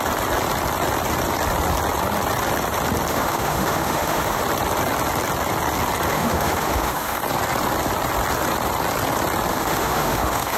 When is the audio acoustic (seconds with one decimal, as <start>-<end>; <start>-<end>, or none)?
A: 0.0-3.1; 4.4-6.1; 7.2-9.5